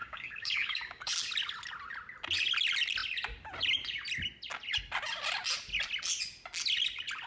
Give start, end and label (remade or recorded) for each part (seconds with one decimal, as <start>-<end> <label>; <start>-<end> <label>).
0.0-1.1 remade; 1.1-7.3 recorded